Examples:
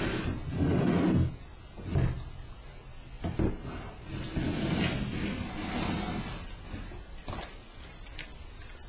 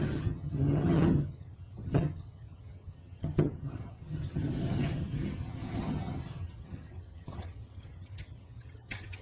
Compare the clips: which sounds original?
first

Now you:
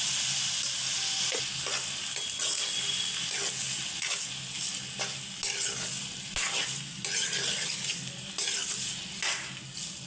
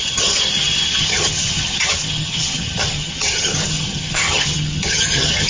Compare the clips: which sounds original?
first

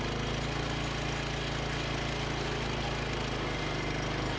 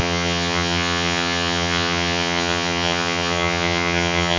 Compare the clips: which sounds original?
first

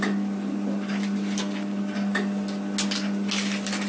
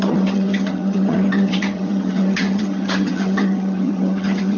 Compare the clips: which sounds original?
first